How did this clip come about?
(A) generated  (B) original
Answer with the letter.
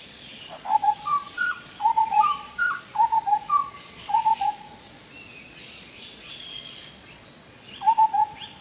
A